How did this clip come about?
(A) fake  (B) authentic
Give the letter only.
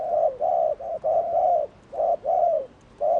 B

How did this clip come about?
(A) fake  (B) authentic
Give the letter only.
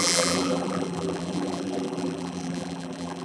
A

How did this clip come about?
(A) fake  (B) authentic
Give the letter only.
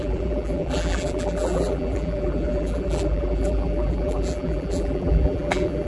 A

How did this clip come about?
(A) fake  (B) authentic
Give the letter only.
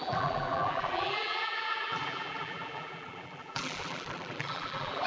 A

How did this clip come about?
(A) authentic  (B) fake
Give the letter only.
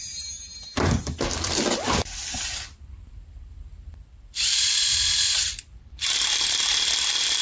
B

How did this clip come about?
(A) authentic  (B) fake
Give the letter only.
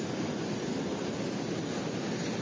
A